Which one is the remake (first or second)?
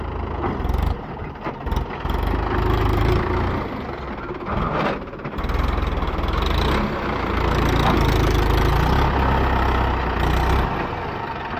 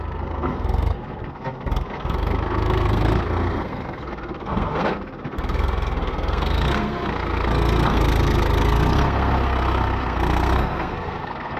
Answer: second